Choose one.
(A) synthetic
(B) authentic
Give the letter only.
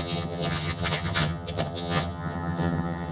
A